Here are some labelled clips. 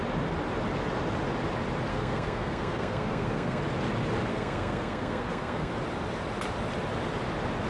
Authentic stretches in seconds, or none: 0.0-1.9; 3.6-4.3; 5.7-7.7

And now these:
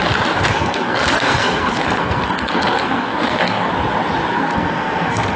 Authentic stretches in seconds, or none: 0.0-0.5; 3.7-4.3

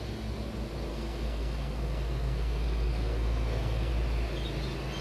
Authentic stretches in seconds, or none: 0.0-0.9; 3.9-5.0